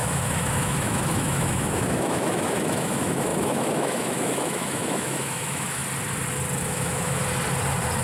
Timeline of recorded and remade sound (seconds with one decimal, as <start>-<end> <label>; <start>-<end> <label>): 0.0-5.8 remade; 5.8-6.6 recorded; 6.6-7.2 remade; 7.2-8.0 recorded